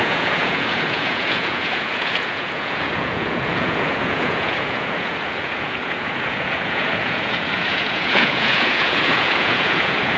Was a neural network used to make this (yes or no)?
yes